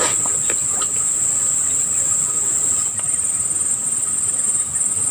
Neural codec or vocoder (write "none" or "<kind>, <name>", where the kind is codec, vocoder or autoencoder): none